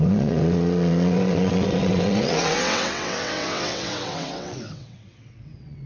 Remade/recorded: remade